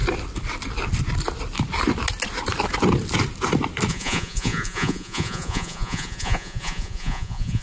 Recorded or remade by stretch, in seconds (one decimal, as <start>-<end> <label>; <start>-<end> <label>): 0.0-3.9 recorded; 3.9-7.6 remade